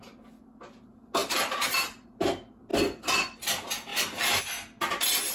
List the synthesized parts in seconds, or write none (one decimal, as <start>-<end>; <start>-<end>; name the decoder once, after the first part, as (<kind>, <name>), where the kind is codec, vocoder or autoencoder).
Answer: 1.2-2.1 (vocoder, BigVGAN v2); 3.9-4.4

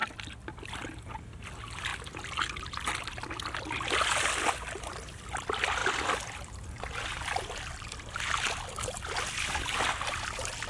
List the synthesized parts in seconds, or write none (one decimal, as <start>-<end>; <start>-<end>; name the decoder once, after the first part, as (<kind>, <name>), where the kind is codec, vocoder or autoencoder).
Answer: none

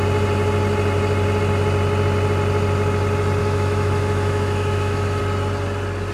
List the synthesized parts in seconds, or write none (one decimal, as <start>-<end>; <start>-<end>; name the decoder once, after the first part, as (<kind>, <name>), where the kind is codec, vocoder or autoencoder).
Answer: 3.4-5.2 (autoencoder, DAC-VAE)